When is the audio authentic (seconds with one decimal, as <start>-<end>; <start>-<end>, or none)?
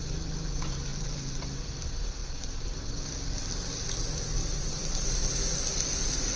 0.0-4.4; 5.1-6.4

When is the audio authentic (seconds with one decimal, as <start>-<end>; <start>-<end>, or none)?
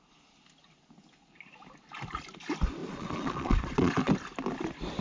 0.0-2.8; 4.1-5.0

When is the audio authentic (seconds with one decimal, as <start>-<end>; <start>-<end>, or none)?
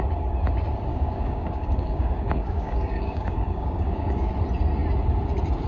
0.0-0.9; 4.3-5.7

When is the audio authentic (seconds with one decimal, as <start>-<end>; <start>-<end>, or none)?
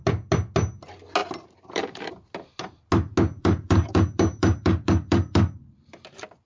0.0-1.2; 2.1-3.4; 5.9-6.5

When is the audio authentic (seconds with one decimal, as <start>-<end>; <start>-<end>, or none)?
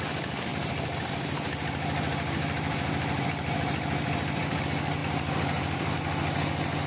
0.0-0.5; 4.6-5.0; 5.9-6.9